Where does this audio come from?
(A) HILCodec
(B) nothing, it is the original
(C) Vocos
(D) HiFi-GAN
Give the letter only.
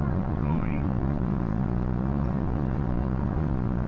C